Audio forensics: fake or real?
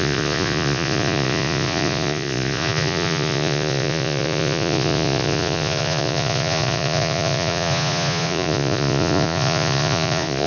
fake